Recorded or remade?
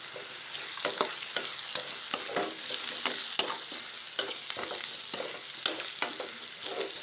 recorded